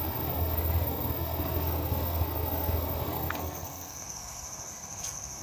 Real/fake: fake